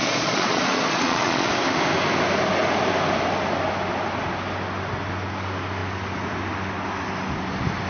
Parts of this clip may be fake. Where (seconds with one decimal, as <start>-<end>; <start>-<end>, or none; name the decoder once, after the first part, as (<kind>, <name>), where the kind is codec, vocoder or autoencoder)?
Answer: 0.0-1.5 (vocoder, Vocos)